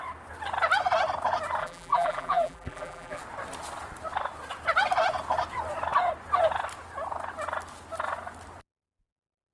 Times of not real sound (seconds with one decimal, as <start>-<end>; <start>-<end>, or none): 1.6-3.2